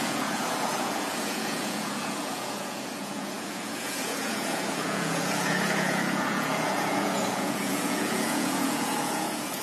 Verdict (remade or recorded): remade